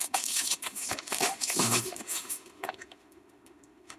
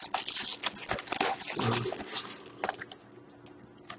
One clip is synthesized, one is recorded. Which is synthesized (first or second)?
first